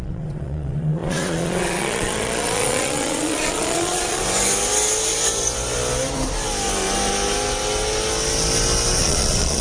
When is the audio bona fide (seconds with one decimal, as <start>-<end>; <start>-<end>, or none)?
4.2-9.0